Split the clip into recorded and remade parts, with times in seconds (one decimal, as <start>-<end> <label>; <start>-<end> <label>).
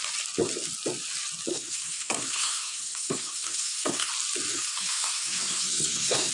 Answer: 0.0-1.5 recorded; 1.5-4.1 remade; 4.1-4.5 recorded; 4.5-6.3 remade